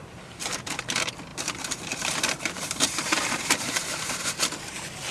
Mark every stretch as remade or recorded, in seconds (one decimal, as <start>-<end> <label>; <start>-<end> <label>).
0.0-0.8 remade; 0.8-1.3 recorded; 1.3-4.3 remade; 4.3-5.1 recorded